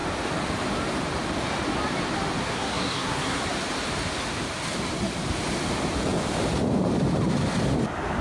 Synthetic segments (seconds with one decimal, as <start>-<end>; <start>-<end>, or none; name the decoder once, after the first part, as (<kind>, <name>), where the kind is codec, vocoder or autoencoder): 2.4-3.4 (codec, SNAC)